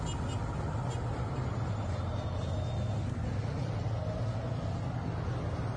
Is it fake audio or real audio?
real